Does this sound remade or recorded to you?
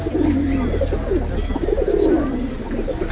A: recorded